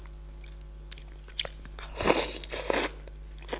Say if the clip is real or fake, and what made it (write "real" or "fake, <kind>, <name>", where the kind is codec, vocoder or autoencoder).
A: real